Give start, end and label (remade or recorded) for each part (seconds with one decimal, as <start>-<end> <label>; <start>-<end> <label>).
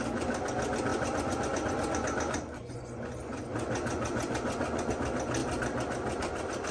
0.0-0.9 recorded; 0.9-4.9 remade; 4.9-6.7 recorded